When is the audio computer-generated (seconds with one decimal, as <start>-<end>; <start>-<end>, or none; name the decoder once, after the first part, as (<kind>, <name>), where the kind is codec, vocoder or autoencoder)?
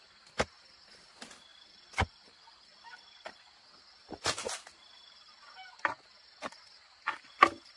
1.5-3.4 (vocoder, BigVGAN v2)